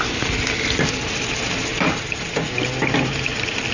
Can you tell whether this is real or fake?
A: real